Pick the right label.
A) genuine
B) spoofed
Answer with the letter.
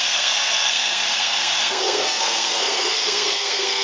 B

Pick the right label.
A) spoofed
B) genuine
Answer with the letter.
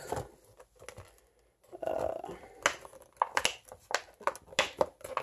B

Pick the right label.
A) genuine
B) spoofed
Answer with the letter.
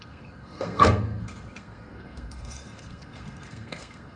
B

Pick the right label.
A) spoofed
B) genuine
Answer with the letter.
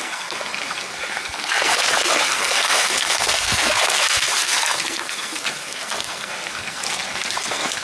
A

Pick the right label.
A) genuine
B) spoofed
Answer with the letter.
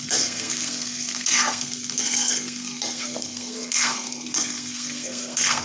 B